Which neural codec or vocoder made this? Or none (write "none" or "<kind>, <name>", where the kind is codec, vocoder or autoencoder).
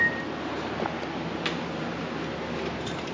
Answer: none